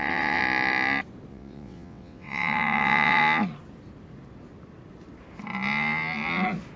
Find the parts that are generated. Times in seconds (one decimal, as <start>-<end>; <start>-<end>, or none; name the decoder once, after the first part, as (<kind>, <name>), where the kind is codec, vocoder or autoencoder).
0.0-0.4 (vocoder, WaveNeXt); 1.3-3.2